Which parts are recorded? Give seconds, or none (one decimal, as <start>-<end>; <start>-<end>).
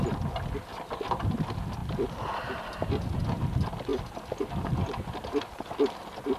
0.0-6.4